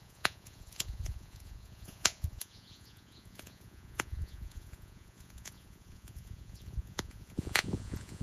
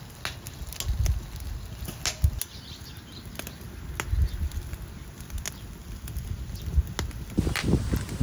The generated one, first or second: first